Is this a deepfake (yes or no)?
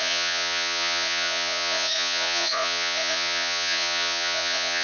yes